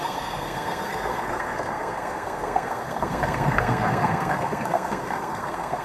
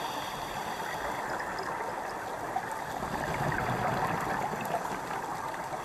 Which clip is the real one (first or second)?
second